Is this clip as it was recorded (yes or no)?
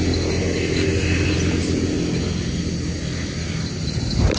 yes